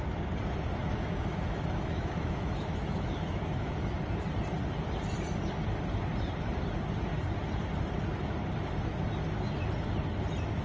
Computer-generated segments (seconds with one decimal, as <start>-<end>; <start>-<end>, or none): 0.8-3.9